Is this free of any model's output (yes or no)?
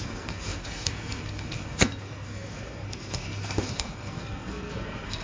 no